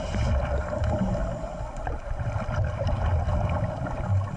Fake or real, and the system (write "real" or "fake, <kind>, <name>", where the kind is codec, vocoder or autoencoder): real